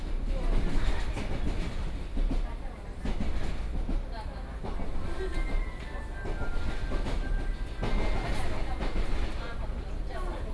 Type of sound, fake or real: real